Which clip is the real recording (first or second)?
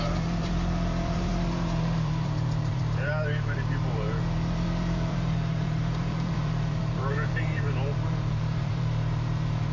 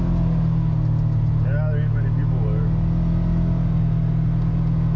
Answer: second